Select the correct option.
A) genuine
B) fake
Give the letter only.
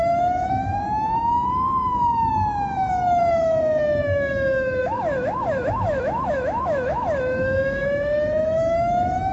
B